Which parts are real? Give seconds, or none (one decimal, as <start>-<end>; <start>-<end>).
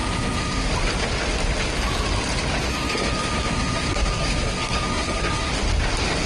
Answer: 0.7-2.7; 5.5-6.3